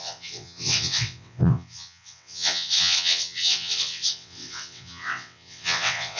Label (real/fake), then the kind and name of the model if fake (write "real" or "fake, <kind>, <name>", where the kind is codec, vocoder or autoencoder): fake, vocoder, WaveNeXt